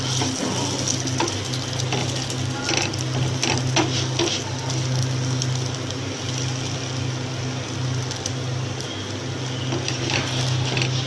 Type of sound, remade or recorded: recorded